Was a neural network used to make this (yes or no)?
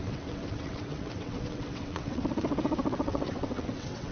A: yes